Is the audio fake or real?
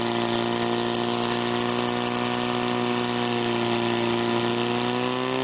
real